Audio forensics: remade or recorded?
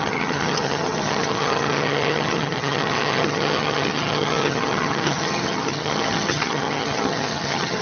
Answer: remade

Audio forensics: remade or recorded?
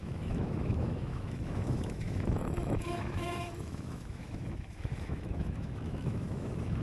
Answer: remade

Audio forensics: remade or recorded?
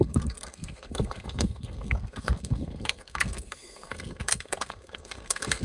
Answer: remade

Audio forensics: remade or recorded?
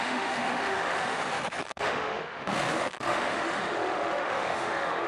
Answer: remade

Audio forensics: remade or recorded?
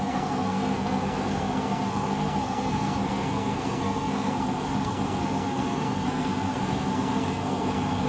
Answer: remade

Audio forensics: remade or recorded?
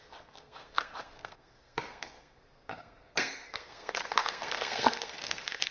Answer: remade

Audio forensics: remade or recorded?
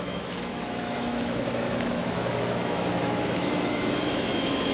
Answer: remade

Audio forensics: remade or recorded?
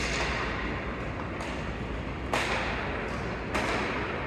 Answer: recorded